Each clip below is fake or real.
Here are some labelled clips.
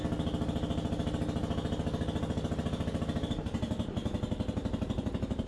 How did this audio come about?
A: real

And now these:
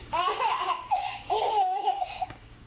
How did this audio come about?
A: fake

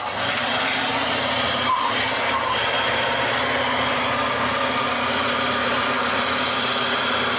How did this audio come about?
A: real